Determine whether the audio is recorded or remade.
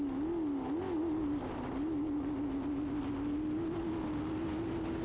recorded